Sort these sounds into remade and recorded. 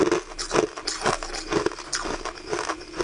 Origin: recorded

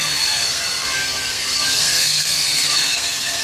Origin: remade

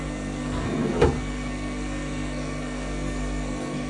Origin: remade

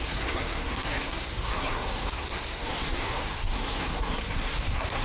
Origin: remade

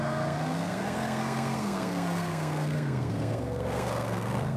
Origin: remade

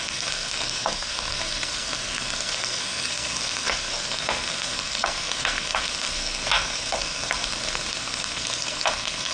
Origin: remade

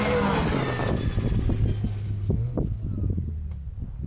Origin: recorded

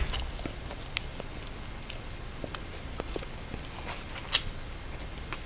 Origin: recorded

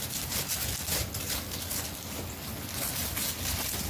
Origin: recorded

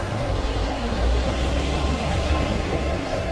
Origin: remade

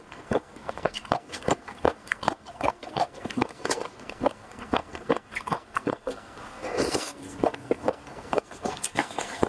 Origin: remade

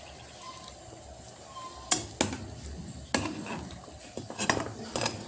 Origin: recorded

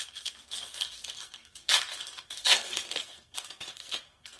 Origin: remade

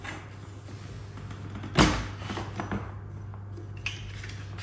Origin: recorded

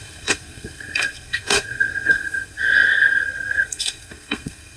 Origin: remade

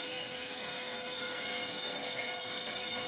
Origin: remade